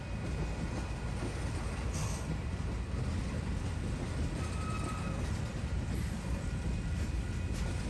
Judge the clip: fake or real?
real